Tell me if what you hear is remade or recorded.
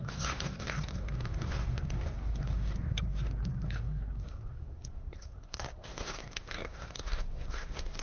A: remade